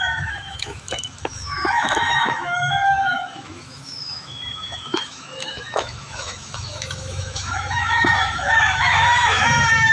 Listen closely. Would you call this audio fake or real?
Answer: fake